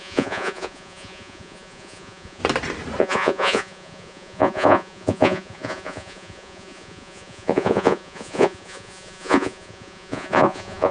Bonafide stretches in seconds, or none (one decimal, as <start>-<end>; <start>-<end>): 2.4-3.0